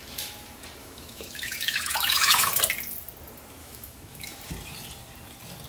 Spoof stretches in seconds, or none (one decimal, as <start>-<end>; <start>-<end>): 0.8-2.6; 3.6-4.5